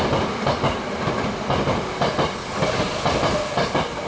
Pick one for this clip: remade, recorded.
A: recorded